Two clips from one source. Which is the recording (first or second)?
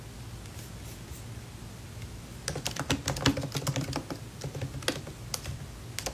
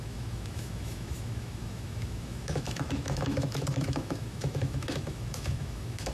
first